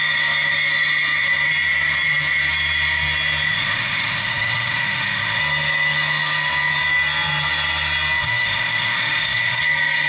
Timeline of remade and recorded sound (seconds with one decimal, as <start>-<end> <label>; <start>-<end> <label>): 0.0-3.5 recorded; 3.5-5.4 remade; 5.4-8.2 recorded; 8.2-9.6 remade; 9.6-10.1 recorded